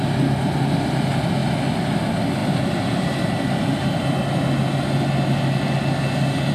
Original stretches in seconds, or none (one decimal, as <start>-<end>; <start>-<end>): 0.0-6.5